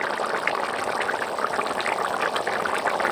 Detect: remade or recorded recorded